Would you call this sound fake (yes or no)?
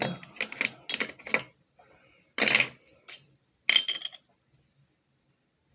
no